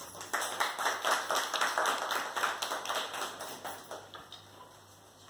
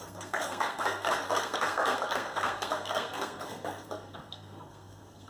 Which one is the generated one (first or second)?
second